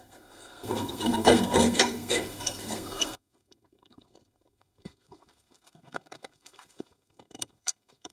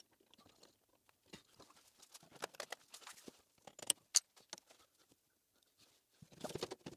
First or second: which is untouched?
second